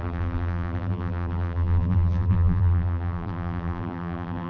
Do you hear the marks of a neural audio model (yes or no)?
yes